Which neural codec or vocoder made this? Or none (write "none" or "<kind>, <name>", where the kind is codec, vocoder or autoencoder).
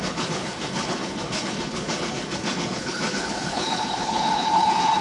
codec, HILCodec